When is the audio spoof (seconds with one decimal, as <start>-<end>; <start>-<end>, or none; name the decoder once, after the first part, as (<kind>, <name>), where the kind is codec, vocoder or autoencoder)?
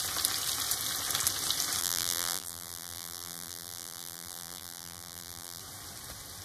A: 1.8-5.6 (vocoder, BigVGAN v2)